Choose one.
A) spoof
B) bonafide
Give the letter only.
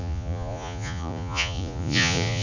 A